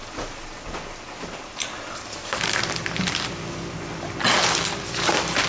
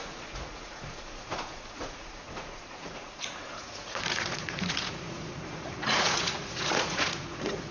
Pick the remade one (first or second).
second